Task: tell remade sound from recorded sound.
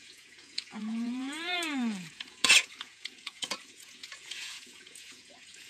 remade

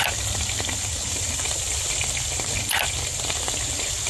recorded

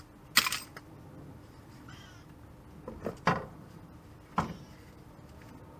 recorded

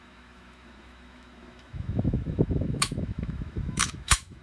remade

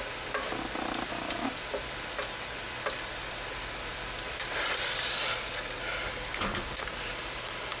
remade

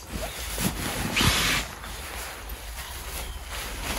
recorded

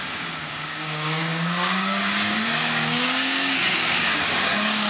remade